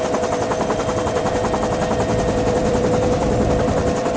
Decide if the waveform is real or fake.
fake